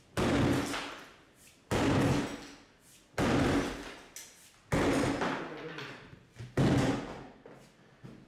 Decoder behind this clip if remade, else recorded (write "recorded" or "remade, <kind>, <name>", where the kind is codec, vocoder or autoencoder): recorded